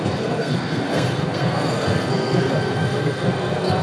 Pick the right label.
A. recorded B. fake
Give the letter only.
B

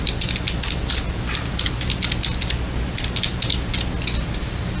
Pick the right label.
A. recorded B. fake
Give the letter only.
A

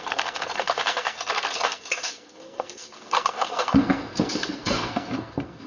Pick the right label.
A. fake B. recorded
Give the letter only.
A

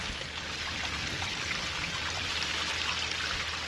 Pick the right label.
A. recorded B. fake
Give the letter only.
A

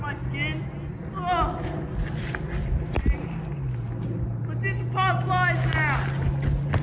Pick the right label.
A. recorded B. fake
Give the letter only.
A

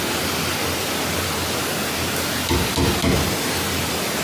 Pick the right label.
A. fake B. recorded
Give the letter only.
B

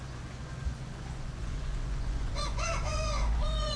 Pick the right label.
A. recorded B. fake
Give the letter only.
B